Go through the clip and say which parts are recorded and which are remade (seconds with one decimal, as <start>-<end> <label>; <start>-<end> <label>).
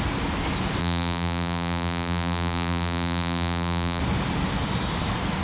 0.0-0.8 recorded; 0.8-4.0 remade; 4.0-5.4 recorded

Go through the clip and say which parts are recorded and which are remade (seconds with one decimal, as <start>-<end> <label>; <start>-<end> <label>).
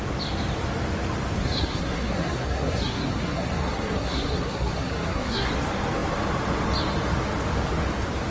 0.0-1.4 recorded; 1.4-5.5 remade; 5.5-8.3 recorded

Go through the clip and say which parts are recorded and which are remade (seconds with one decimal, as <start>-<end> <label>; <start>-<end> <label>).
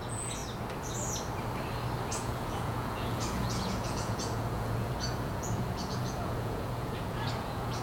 0.0-0.4 remade; 0.4-2.1 recorded; 2.1-7.8 remade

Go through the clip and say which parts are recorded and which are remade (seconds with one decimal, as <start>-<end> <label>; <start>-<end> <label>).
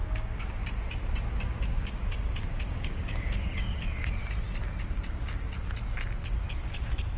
0.0-0.6 remade; 0.6-1.6 recorded; 1.6-2.0 remade; 2.0-2.5 recorded; 2.5-3.5 remade; 3.5-7.2 recorded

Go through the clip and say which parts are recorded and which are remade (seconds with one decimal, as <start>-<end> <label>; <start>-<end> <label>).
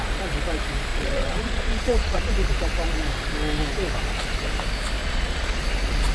0.0-0.9 recorded; 0.9-2.3 remade; 2.3-5.0 recorded; 5.0-5.6 remade; 5.6-6.1 recorded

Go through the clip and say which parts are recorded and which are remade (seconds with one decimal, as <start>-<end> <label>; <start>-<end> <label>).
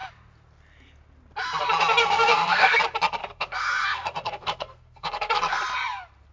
0.0-2.0 recorded; 2.0-2.8 remade; 2.8-3.2 recorded; 3.2-5.6 remade; 5.6-6.3 recorded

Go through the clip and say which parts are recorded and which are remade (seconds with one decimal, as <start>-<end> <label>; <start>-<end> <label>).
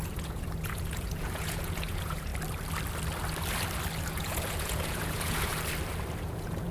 0.0-2.3 remade; 2.3-4.1 recorded; 4.1-5.5 remade; 5.5-6.2 recorded; 6.2-6.7 remade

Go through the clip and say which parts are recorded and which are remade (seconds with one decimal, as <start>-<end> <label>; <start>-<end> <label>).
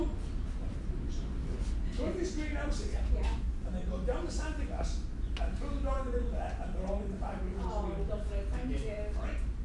0.0-9.6 recorded